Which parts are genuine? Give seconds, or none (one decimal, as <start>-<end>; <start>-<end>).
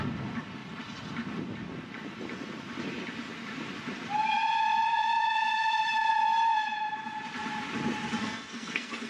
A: 0.0-8.2